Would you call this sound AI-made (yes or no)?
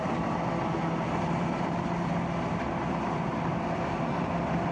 no